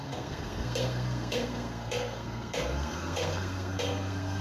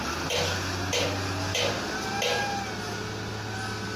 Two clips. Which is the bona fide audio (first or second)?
second